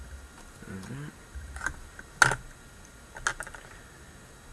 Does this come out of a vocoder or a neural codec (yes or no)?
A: no